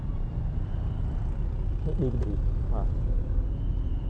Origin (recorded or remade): recorded